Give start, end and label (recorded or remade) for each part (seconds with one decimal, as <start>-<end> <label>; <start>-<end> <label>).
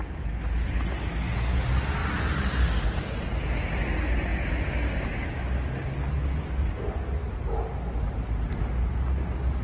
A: 0.0-9.6 recorded